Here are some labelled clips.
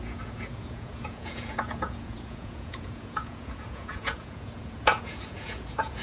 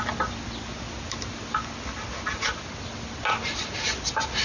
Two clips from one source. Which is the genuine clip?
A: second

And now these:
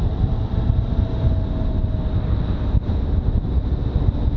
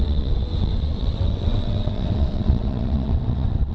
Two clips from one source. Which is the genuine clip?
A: first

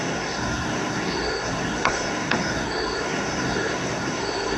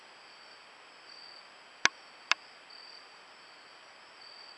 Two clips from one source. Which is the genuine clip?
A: second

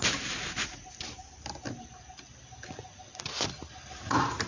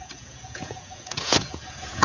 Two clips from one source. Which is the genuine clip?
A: first